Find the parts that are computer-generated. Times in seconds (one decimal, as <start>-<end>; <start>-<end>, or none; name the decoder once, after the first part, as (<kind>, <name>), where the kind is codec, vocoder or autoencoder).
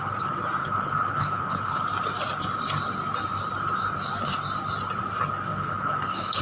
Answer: 0.6-1.8 (codec, HILCodec); 5.5-6.4